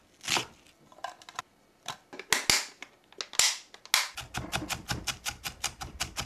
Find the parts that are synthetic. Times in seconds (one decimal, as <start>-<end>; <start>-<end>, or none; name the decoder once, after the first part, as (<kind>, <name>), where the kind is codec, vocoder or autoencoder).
none